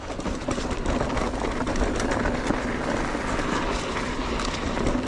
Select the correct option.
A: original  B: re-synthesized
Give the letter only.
A